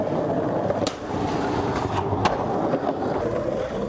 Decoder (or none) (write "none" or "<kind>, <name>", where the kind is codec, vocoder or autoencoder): none